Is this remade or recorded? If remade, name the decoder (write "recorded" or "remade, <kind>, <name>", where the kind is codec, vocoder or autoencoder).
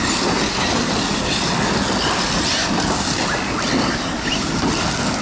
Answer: recorded